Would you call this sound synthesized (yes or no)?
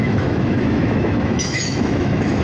yes